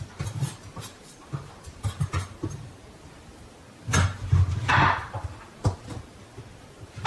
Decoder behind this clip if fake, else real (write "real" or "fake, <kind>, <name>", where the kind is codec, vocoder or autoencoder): real